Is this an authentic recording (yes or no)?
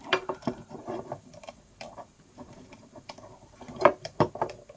no